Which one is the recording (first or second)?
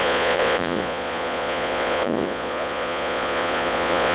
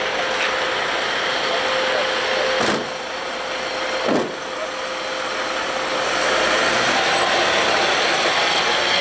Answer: second